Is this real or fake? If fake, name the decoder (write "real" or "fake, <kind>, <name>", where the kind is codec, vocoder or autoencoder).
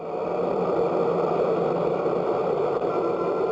real